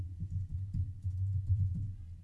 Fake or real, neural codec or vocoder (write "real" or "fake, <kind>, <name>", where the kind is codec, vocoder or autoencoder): fake, vocoder, BigVGAN v2